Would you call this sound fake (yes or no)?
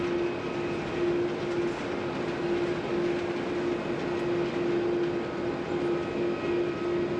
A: no